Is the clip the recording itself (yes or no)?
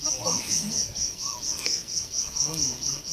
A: no